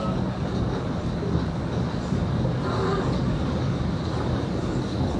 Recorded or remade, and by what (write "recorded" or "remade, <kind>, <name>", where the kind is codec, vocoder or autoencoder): remade, codec, DAC